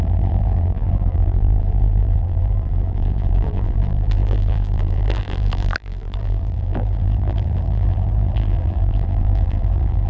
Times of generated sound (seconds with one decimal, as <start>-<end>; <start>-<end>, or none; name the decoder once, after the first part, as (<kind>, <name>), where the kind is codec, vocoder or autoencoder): 0.0-10.1 (vocoder, BigVGAN v2)